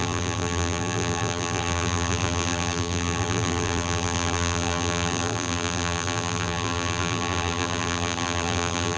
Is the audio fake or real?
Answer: fake